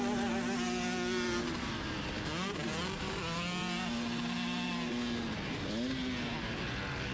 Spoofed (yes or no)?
no